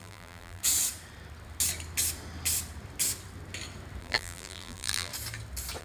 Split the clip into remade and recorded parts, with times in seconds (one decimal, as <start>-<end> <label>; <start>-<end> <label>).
0.0-0.6 remade; 0.6-4.0 recorded; 4.0-5.1 remade; 5.1-5.8 recorded